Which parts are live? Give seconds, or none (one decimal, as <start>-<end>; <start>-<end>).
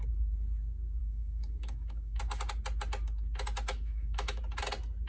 0.0-1.0; 2.2-3.7; 4.4-5.1